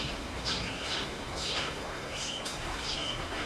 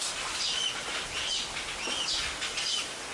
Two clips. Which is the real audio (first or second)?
second